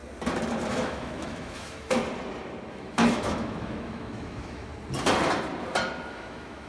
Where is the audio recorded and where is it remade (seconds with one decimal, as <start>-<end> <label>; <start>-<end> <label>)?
0.0-0.7 recorded; 0.7-2.0 remade; 2.0-2.7 recorded; 2.7-4.7 remade; 4.7-6.1 recorded; 6.1-6.7 remade